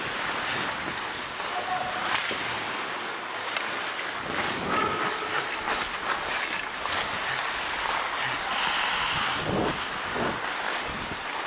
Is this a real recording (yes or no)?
yes